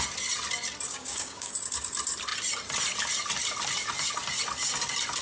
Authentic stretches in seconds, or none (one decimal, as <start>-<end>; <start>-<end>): 0.0-0.9; 1.5-5.2